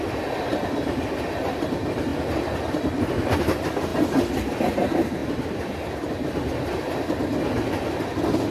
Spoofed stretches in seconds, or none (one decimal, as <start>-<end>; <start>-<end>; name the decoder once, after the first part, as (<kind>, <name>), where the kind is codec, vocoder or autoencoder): none